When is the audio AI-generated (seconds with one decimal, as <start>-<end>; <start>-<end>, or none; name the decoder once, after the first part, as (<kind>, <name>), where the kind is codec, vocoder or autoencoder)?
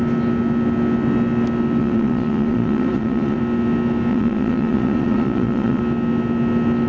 1.8-3.4 (vocoder, Vocos); 4.1-5.8